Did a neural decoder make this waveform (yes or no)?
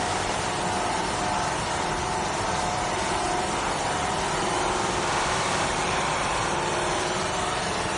yes